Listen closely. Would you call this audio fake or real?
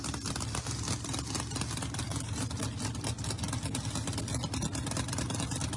real